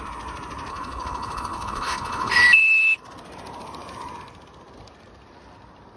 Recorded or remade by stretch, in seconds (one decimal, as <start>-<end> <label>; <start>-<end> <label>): 0.0-0.7 recorded; 0.7-2.3 remade; 2.3-6.0 recorded